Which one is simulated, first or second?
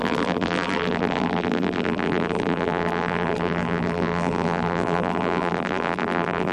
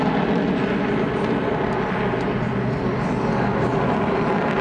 first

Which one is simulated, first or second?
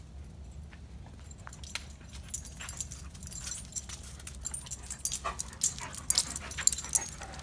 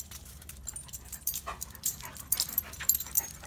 second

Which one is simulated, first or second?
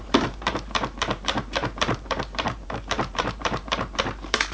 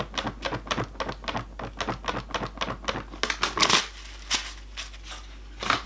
first